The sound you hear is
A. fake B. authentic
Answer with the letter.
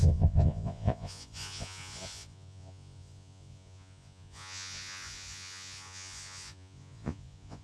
A